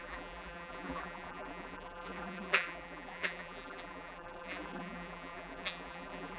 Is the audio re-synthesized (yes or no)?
yes